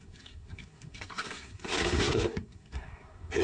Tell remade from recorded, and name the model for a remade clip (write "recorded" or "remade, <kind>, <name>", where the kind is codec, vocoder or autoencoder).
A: remade, codec, SNAC